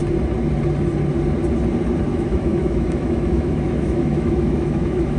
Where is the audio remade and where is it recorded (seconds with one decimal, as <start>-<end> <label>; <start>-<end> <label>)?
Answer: 0.0-2.1 recorded; 2.1-5.2 remade